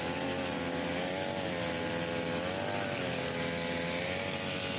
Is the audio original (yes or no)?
yes